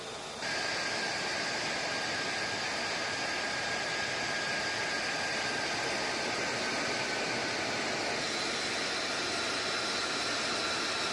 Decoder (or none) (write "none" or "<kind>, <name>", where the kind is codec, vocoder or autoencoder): none